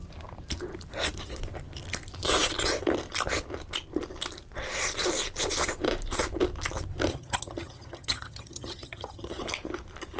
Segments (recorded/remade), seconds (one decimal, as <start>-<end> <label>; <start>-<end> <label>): 0.0-7.1 recorded; 7.1-9.4 remade; 9.4-10.2 recorded